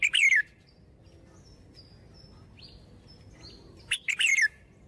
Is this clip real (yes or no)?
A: yes